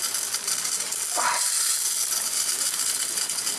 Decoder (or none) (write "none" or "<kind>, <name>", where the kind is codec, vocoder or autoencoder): none